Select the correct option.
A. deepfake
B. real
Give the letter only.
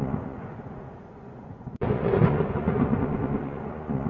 A